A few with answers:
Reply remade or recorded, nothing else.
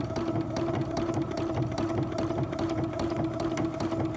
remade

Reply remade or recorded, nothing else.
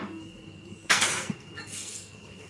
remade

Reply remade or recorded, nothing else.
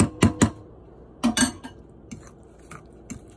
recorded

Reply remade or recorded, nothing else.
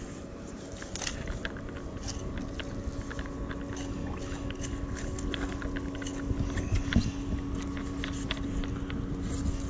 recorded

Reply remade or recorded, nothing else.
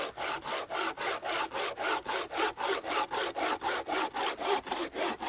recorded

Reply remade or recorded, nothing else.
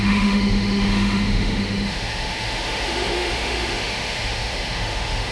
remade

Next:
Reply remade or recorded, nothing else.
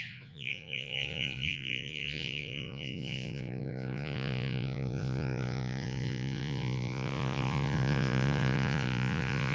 remade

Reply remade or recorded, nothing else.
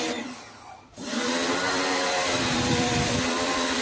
remade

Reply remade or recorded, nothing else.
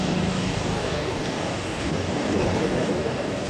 remade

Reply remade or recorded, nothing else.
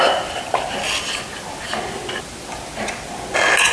recorded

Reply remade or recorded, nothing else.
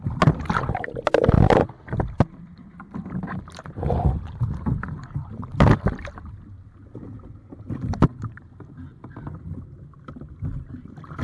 recorded